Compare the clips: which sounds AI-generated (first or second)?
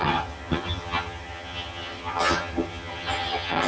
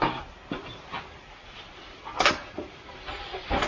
first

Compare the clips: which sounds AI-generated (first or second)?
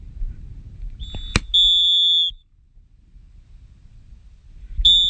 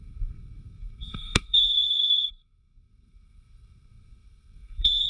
second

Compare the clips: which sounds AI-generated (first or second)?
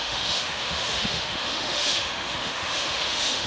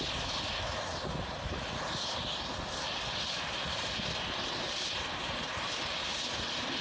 first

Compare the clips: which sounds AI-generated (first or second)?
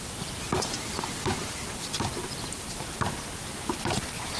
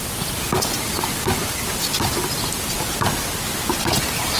first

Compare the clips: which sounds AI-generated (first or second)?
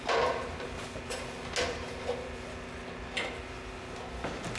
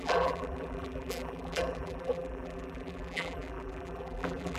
second